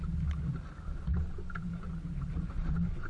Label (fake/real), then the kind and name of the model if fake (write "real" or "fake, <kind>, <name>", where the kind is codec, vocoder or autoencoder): real